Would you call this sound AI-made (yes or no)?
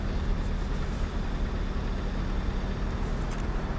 no